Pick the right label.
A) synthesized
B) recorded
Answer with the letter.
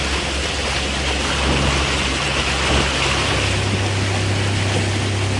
B